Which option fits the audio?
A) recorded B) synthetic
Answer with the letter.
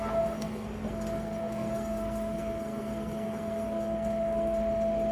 B